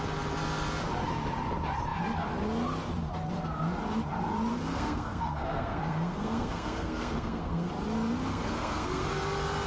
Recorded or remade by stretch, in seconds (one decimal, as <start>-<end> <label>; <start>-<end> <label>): 0.0-4.5 recorded; 4.5-7.7 remade; 7.7-8.3 recorded; 8.3-9.1 remade; 9.1-9.7 recorded